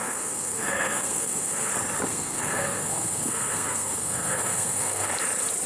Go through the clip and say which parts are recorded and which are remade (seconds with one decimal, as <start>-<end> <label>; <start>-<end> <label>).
0.0-1.7 remade; 1.7-2.1 recorded; 2.1-5.1 remade; 5.1-5.7 recorded